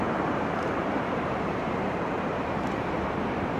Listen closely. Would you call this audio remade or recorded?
remade